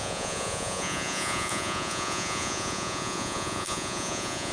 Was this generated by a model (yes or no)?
yes